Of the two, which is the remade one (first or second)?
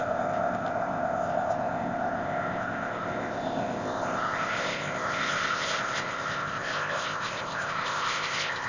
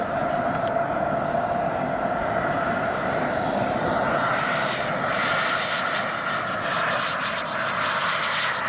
first